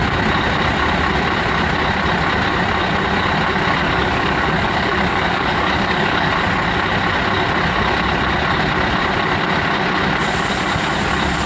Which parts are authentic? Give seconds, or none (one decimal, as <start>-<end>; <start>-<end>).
0.0-3.8; 6.4-11.5